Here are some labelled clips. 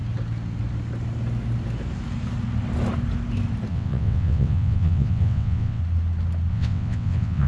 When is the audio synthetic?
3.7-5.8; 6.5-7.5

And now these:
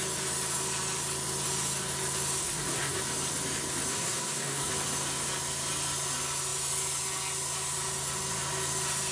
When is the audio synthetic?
2.4-3.0; 3.9-4.7

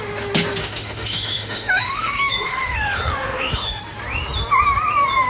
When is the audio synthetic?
0.6-3.8

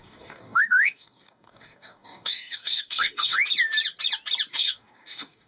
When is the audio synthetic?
0.0-3.4; 4.5-5.5

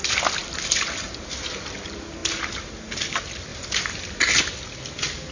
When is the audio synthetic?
none

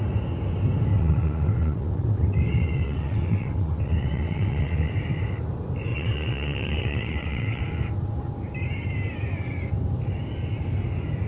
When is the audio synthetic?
0.9-4.9; 5.9-7.6